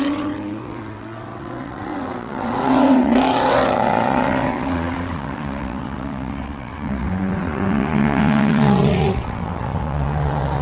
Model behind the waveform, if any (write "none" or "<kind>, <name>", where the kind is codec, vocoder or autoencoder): vocoder, WaveNeXt